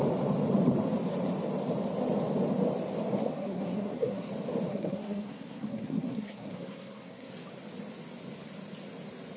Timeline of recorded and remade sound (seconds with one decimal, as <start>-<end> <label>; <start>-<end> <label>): 0.0-3.2 recorded; 3.2-4.3 remade; 4.3-4.7 recorded; 4.7-7.3 remade; 7.3-9.4 recorded